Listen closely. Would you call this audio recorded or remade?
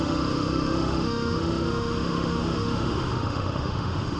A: remade